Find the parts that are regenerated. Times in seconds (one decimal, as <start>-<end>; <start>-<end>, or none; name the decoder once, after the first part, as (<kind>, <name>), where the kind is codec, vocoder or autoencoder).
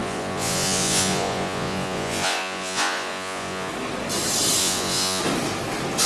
0.0-3.7 (vocoder, Vocos); 4.6-5.2